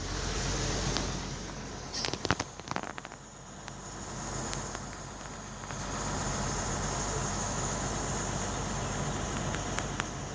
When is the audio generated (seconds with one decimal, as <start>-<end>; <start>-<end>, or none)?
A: 7.3-7.9